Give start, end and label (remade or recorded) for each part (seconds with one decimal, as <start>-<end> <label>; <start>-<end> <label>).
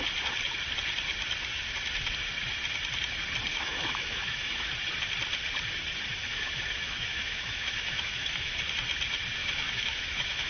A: 0.0-3.5 recorded; 3.5-4.7 remade; 4.7-6.2 recorded; 6.2-8.6 remade; 8.6-9.4 recorded; 9.4-10.5 remade